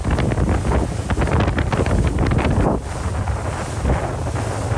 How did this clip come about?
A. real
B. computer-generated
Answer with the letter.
A